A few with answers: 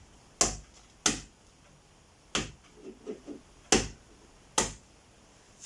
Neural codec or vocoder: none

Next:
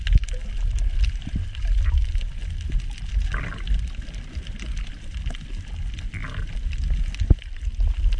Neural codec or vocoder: none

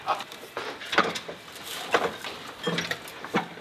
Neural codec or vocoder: none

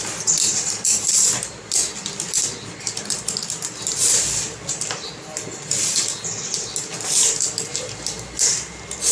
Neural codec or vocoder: none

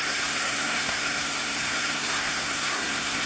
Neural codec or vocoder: codec, SNAC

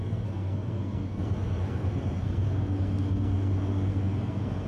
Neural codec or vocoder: codec, SNAC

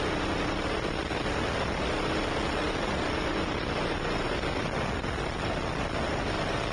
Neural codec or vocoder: none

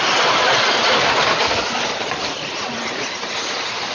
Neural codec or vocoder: none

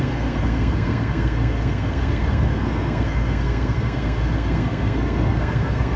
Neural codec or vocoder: codec, SNAC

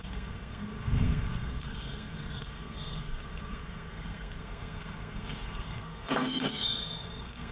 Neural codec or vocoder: codec, SNAC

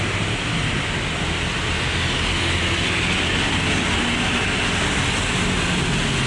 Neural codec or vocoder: none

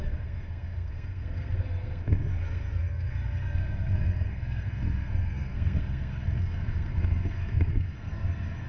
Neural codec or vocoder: codec, SNAC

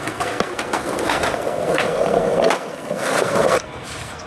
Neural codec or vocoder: codec, SNAC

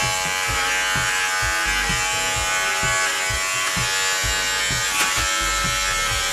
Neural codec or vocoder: none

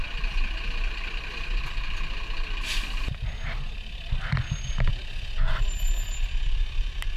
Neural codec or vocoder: none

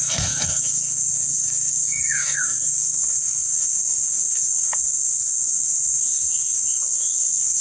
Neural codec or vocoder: codec, SNAC